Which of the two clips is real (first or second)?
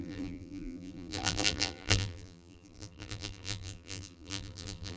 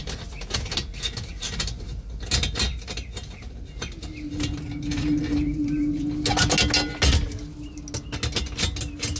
second